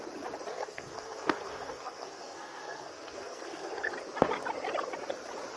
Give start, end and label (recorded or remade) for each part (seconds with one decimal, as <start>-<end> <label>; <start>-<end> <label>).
0.0-0.5 recorded; 0.5-3.9 remade; 3.9-5.6 recorded